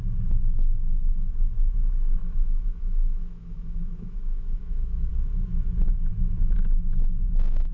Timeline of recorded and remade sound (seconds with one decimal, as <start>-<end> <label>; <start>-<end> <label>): 0.0-2.2 recorded; 2.2-5.1 remade; 5.1-7.7 recorded